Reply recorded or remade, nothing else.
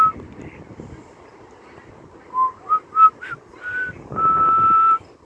recorded